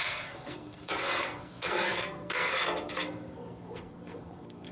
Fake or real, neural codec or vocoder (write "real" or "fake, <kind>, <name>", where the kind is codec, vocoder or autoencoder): fake, codec, SNAC